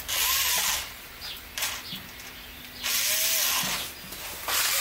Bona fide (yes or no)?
yes